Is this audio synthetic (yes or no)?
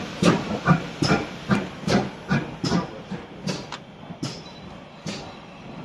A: no